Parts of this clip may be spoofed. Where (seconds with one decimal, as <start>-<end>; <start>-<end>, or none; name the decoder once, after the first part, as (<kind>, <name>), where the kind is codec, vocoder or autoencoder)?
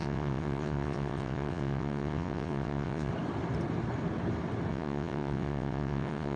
0.0-3.1 (vocoder, WaveNeXt); 4.7-6.4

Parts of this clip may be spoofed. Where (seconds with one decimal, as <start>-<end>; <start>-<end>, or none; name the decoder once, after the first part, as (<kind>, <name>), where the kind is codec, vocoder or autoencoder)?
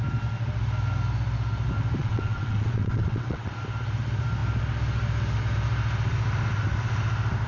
2.0-3.5 (vocoder, WaveNeXt)